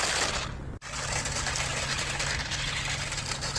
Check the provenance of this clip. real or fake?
real